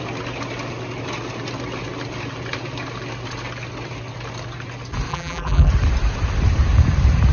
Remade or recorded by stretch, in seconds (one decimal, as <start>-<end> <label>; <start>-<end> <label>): 0.0-5.1 recorded; 5.1-5.7 remade; 5.7-7.3 recorded